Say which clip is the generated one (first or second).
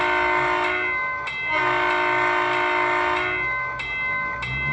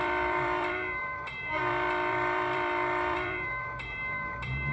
second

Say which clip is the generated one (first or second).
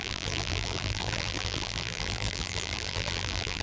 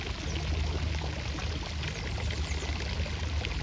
first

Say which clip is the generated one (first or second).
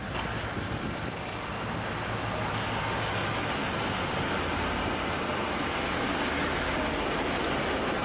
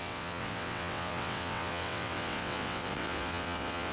second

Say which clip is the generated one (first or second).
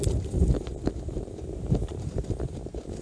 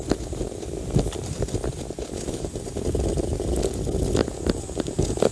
first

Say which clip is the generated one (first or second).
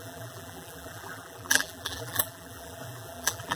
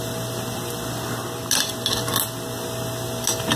first